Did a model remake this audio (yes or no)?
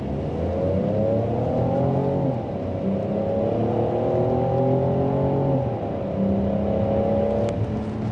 no